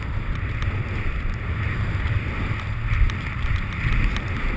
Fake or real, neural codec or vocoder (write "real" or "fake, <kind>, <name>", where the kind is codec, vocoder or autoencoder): real